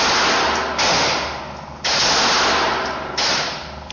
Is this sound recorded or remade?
recorded